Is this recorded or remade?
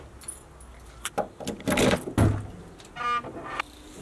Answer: recorded